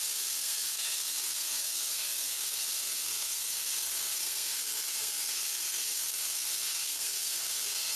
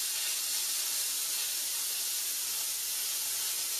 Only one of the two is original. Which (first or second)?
second